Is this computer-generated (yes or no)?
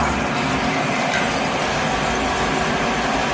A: no